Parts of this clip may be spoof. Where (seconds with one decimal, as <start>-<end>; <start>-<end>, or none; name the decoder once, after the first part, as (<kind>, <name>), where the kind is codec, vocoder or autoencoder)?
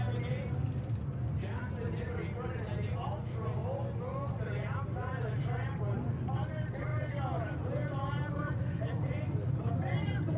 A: none